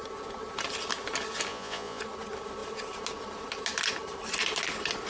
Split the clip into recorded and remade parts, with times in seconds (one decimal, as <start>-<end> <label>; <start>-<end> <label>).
0.0-1.5 recorded; 1.5-2.0 remade; 2.0-5.1 recorded